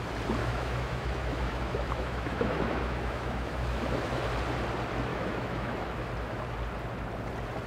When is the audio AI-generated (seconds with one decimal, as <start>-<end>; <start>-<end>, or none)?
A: 0.4-4.2; 5.1-6.1